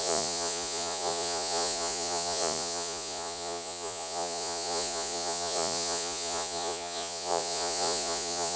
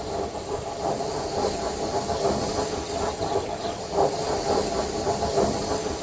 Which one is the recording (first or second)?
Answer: second